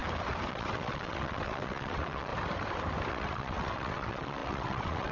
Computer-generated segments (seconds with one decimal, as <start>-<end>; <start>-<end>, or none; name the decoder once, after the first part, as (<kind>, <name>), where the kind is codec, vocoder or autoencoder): 0.5-2.3 (vocoder, WaveNeXt); 3.1-5.1